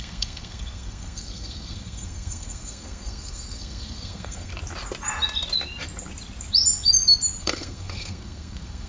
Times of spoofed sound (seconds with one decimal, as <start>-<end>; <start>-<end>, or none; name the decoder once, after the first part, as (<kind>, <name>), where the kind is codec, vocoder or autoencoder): 0.0-4.5 (codec, SNAC); 7.4-8.9